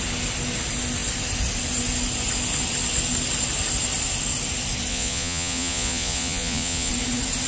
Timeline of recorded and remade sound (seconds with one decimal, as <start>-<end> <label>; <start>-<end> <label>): 0.0-4.9 recorded; 4.9-6.9 remade; 6.9-7.5 recorded